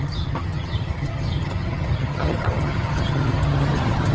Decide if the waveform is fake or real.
fake